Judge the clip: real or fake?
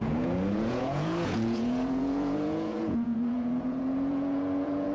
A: fake